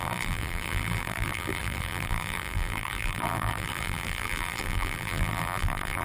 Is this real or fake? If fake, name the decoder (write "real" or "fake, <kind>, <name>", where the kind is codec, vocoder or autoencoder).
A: fake, vocoder, BigVGAN v2